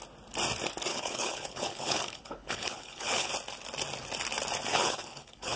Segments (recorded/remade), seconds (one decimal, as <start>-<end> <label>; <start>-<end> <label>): 0.0-0.9 recorded; 0.9-3.3 remade; 3.3-4.7 recorded; 4.7-5.6 remade